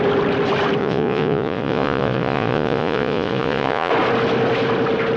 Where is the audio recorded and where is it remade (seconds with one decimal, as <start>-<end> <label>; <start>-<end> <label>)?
0.0-0.8 recorded; 0.8-3.9 remade; 3.9-5.2 recorded